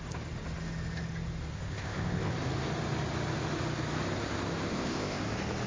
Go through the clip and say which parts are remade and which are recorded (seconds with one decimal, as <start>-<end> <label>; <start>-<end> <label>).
0.0-1.5 recorded; 1.5-2.3 remade; 2.3-4.7 recorded; 4.7-5.2 remade; 5.2-5.7 recorded